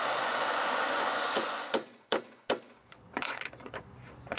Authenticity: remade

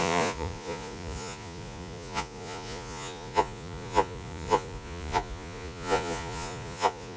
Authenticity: remade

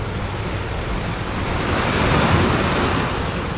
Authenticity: recorded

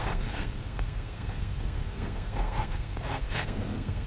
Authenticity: remade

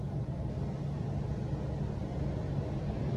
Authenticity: recorded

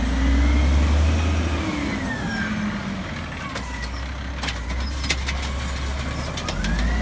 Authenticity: recorded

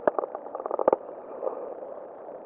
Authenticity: remade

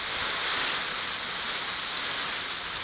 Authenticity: recorded